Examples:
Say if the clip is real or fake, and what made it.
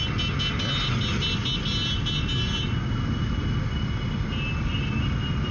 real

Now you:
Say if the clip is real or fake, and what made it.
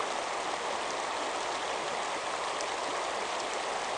real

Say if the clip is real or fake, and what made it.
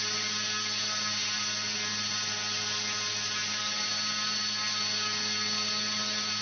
real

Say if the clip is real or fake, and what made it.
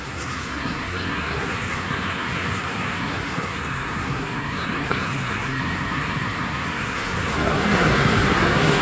fake, codec, SNAC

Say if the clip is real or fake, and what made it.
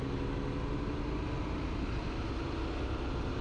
real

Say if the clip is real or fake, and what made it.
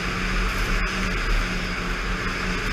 real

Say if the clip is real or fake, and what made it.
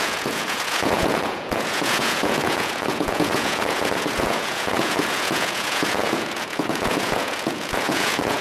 fake, vocoder, Vocos